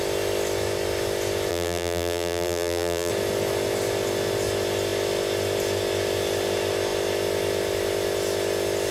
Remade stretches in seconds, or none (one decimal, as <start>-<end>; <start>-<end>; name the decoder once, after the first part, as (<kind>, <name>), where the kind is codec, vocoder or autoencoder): 1.5-3.1 (vocoder, BigVGAN v2)